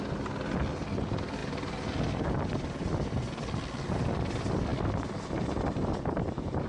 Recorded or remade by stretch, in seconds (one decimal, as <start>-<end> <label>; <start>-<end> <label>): 0.0-6.7 recorded